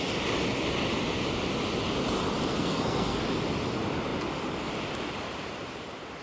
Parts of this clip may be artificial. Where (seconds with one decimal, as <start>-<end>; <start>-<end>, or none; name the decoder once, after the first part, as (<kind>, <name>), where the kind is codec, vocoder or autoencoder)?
2.5-3.2 (codec, SNAC)